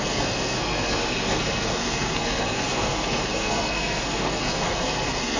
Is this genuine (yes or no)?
no